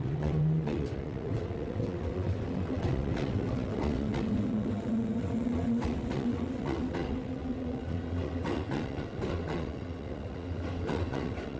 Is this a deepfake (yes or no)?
yes